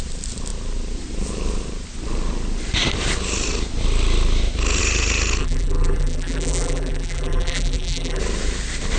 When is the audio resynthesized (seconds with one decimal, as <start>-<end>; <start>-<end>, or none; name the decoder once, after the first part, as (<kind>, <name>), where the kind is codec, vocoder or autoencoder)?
5.4-8.2 (vocoder, BigVGAN v2)